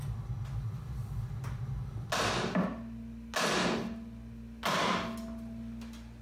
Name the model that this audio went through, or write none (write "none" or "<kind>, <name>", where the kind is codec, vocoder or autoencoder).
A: none